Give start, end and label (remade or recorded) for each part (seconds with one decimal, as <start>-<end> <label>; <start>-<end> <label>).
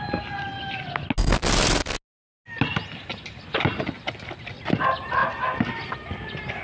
0.0-6.6 recorded